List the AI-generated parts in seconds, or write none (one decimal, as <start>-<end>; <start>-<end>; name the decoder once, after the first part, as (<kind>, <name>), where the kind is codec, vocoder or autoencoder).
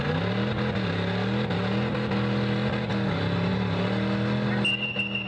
none